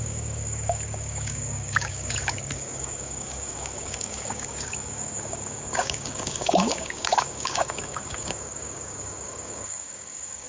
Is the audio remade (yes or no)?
yes